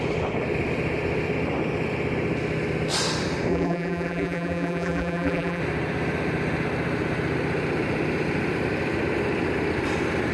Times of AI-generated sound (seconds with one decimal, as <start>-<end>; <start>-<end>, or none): 3.5-5.6